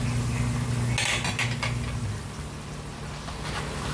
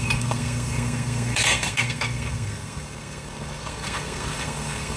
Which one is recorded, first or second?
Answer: first